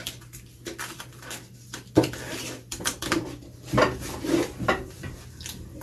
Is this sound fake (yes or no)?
yes